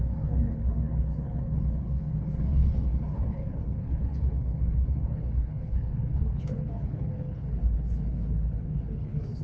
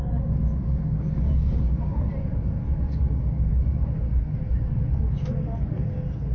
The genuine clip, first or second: second